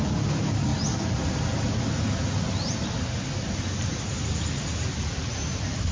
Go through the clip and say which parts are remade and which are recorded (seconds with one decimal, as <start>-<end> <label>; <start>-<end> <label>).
0.0-5.9 recorded